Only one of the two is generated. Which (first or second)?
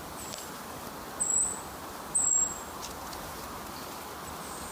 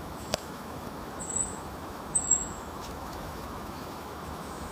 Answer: second